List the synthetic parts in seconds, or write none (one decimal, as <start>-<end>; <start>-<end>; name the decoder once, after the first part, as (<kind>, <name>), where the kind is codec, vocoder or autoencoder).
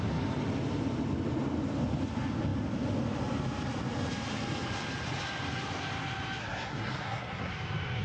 6.4-7.5 (codec, SNAC)